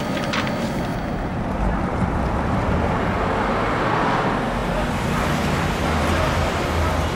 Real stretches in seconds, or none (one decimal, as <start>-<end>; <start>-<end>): 0.0-1.3; 2.7-4.6